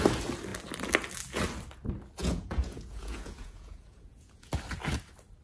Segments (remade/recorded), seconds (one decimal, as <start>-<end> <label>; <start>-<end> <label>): 0.0-2.2 recorded; 2.2-4.5 remade; 4.5-5.4 recorded